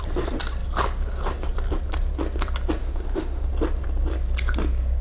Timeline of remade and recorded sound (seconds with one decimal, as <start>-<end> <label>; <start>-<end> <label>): 0.0-2.8 recorded; 2.8-3.5 remade; 3.5-5.0 recorded